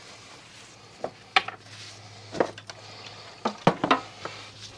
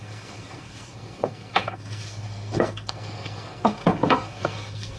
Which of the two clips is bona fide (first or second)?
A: first